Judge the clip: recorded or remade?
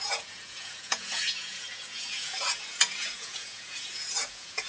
remade